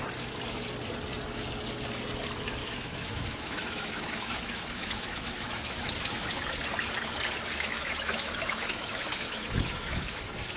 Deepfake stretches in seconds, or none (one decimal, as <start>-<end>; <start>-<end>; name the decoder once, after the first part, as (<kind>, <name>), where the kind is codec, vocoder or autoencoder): 2.6-6.5 (autoencoder, DAC-VAE); 7.5-10.2